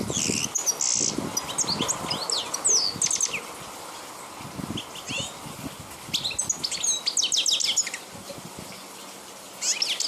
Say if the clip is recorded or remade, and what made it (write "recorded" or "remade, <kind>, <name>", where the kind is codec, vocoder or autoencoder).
recorded